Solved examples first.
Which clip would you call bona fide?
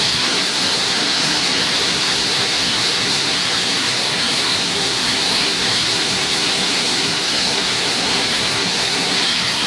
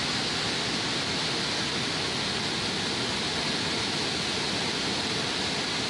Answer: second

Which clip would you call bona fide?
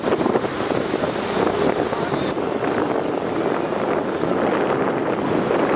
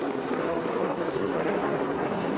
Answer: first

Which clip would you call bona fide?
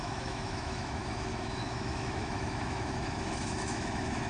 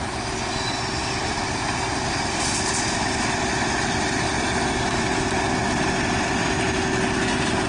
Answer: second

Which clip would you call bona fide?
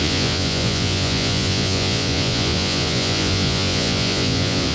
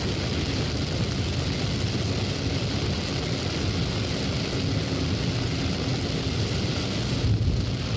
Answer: second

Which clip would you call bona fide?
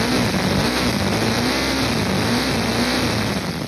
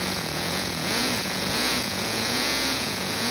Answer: first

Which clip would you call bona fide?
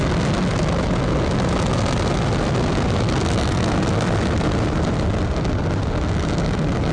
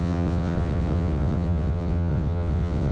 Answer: first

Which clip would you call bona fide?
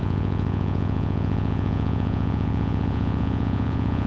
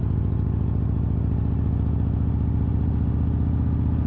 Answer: second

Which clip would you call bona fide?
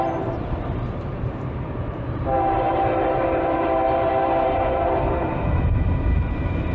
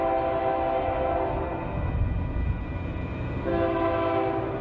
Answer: second